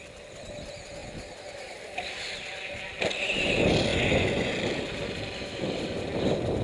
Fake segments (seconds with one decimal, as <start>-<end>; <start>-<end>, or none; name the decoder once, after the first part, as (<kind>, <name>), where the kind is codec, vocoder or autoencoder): 3.9-4.5 (vocoder, Vocos)